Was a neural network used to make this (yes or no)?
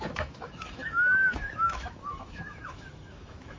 yes